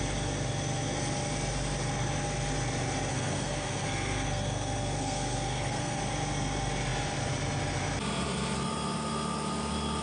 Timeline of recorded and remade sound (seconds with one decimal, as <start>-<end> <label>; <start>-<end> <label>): 0.0-3.1 recorded; 3.1-6.0 remade; 6.0-10.0 recorded